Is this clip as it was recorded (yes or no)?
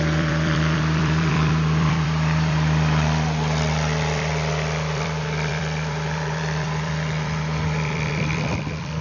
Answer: no